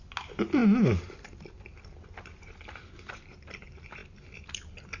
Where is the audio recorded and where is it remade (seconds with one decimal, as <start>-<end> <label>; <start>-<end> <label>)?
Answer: 0.0-5.0 recorded